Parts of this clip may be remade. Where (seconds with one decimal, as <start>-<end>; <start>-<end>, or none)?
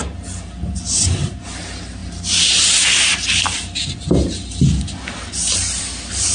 none